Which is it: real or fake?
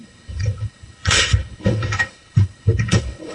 fake